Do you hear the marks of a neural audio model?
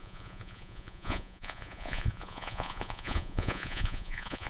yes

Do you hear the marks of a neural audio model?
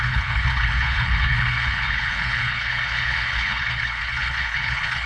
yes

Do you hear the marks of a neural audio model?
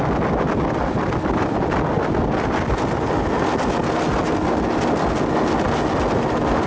no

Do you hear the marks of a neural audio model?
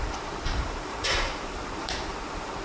yes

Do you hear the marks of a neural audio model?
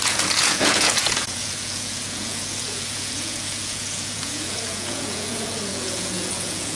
yes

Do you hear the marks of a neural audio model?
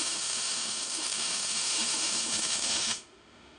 yes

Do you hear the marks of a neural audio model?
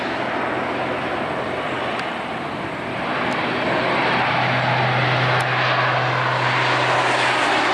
no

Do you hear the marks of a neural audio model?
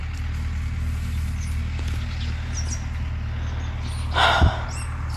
no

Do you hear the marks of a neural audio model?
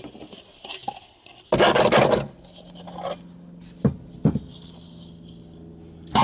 no